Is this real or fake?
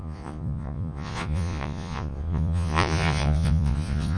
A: fake